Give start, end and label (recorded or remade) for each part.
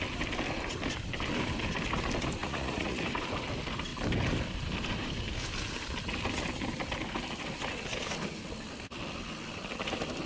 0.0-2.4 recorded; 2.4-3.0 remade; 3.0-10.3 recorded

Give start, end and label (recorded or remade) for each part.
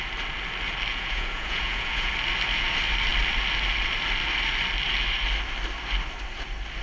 0.0-0.9 recorded; 0.9-2.1 remade; 2.1-6.8 recorded